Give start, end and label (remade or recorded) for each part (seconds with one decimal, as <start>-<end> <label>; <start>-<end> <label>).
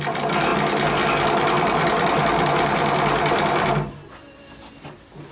0.0-5.3 recorded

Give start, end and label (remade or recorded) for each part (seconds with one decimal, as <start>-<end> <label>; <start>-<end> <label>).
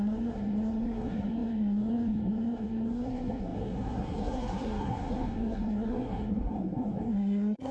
0.0-7.7 remade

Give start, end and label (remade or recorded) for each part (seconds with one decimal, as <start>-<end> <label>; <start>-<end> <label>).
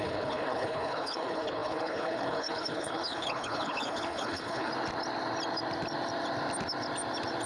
0.0-4.7 remade; 4.7-7.5 recorded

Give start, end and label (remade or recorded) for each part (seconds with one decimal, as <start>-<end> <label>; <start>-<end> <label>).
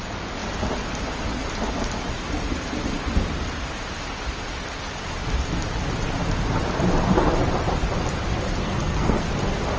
0.0-8.6 recorded; 8.6-9.3 remade; 9.3-9.8 recorded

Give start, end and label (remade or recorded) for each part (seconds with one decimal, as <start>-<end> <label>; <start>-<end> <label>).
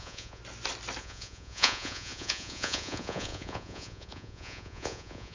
0.0-0.4 remade; 0.4-1.0 recorded; 1.0-5.3 remade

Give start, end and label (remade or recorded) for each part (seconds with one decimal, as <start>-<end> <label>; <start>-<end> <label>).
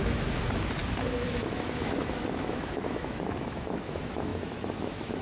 0.0-5.2 remade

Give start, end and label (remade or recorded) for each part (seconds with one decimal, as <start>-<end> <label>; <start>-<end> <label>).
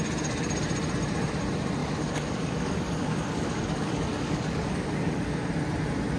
0.0-1.8 recorded; 1.8-5.5 remade; 5.5-6.2 recorded